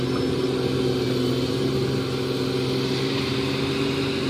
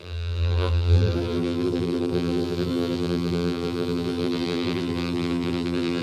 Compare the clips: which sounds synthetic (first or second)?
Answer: second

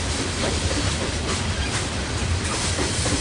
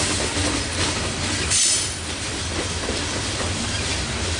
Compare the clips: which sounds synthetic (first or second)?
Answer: first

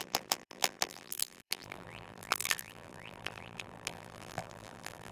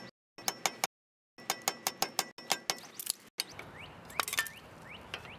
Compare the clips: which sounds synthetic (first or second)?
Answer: first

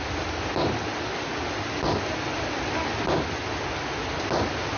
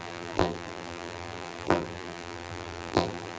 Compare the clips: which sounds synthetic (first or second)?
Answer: second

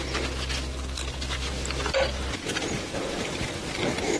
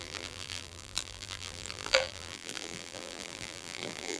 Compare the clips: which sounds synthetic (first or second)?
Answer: second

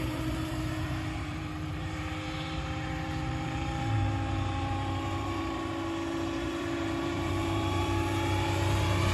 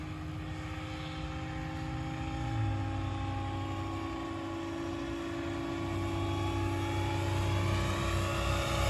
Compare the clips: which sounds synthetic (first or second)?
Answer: first